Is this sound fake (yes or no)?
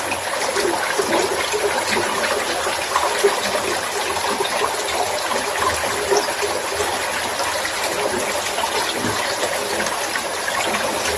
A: no